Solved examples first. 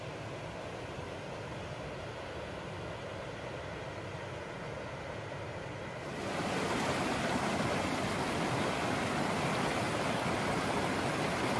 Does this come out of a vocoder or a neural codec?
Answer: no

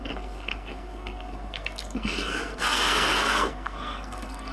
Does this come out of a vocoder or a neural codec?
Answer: yes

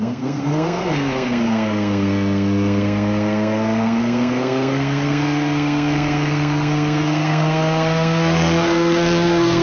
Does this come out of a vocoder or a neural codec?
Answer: yes